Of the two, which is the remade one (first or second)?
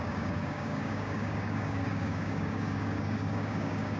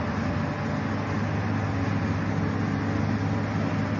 first